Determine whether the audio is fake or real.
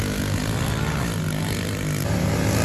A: real